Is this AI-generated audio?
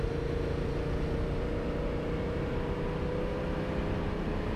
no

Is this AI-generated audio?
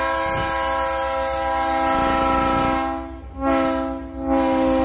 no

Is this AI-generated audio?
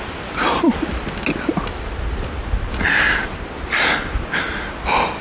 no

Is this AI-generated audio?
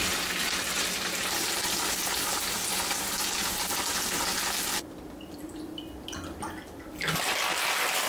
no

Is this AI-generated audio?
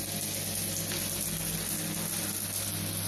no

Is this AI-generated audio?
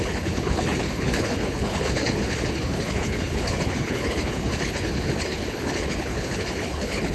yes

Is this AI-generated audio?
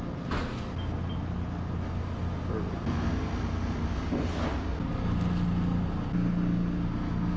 no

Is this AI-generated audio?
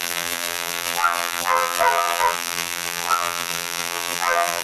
yes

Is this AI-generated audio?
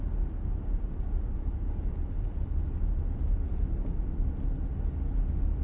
no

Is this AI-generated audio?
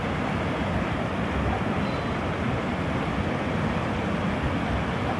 no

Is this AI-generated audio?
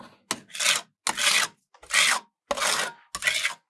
no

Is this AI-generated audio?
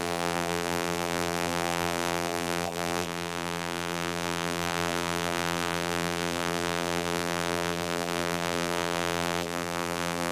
yes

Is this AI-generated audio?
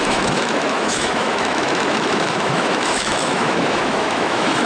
yes